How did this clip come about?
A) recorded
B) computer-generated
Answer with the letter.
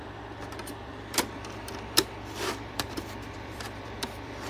B